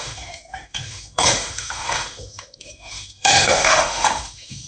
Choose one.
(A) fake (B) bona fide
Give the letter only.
A